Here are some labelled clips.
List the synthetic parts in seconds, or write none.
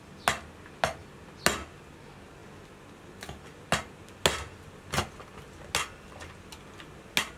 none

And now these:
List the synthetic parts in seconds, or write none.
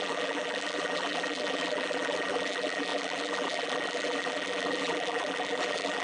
0.0-6.0 (vocoder, BigVGAN v2)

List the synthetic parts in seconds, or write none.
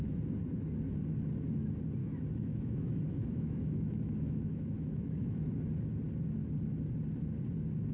2.0-5.5 (autoencoder, DAC-VAE)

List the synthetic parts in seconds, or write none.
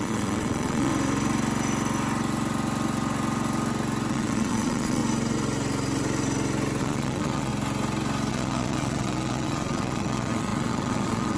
0.0-0.9 (vocoder, Vocos); 4.1-5.0; 6.8-7.5; 8.3-11.4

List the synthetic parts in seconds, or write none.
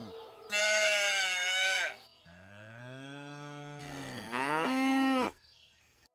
0.6-6.1 (codec, SNAC)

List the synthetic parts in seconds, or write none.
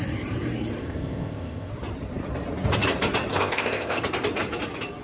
0.8-1.7 (codec, ZipCodec); 3.3-4.0